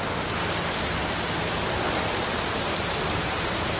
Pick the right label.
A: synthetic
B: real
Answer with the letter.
B